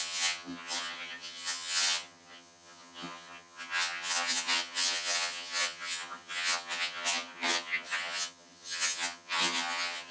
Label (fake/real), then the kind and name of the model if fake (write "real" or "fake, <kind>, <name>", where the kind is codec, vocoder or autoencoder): fake, vocoder, HiFi-GAN